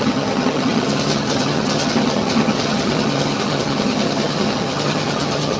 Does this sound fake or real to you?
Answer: fake